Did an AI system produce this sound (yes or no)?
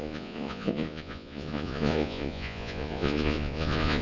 yes